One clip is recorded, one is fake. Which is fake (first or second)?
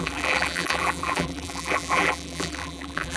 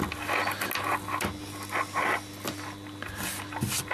first